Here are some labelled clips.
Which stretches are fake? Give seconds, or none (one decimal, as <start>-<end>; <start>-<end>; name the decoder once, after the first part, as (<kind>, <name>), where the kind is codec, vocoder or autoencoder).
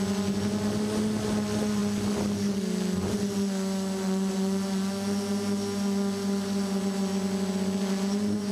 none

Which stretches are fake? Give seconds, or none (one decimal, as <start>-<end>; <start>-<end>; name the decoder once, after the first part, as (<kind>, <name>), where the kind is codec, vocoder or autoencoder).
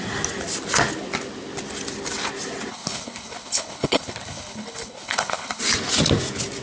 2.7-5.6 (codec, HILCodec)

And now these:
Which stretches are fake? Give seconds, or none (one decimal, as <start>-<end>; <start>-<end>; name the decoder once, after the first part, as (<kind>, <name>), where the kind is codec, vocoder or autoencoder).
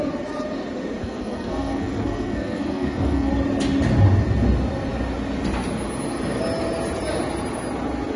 1.0-3.3 (codec, SNAC)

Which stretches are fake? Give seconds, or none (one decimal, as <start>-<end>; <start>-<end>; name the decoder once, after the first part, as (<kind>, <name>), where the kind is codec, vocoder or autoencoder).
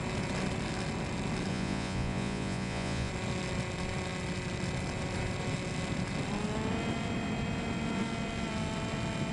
1.5-3.1 (vocoder, Vocos)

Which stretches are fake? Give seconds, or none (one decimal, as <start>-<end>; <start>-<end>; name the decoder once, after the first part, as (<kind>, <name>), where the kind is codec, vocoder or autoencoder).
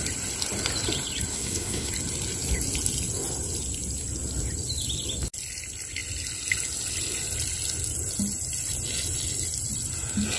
1.3-1.9 (codec, SNAC)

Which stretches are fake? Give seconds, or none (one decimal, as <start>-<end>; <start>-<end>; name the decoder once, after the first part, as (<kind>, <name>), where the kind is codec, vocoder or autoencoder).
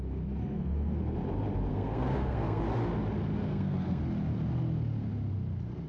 0.4-1.0 (codec, SNAC); 1.7-2.6; 3.4-4.0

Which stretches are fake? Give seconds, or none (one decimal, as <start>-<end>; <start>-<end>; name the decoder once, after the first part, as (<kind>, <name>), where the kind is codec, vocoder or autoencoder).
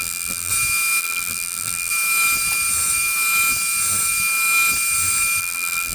0.0-0.5 (vocoder, BigVGAN v2); 1.0-1.9; 5.4-5.9